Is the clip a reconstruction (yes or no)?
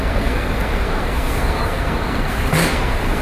yes